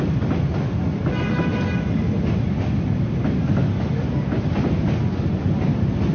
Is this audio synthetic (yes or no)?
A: no